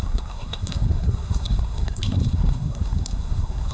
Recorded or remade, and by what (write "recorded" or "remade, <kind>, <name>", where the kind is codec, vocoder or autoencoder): remade, codec, SNAC